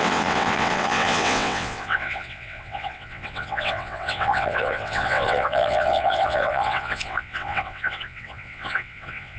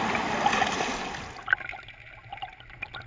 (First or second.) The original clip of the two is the second